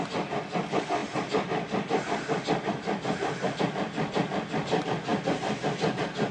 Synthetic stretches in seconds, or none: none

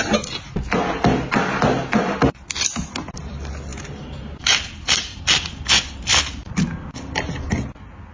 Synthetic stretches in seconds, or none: 3.7-5.2 (vocoder, BigVGAN v2); 6.1-6.6